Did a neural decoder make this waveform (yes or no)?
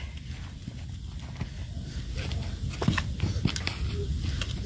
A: no